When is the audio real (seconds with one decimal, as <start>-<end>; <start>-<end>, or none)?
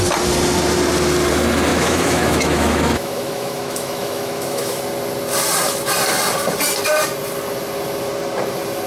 0.0-1.7; 4.8-8.9